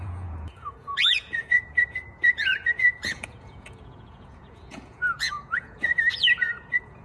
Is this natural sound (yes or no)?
no